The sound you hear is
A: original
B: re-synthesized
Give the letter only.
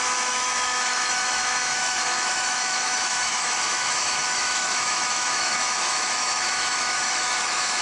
B